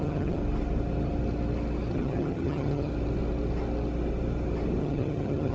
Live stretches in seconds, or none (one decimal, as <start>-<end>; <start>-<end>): 0.4-1.9; 2.9-4.8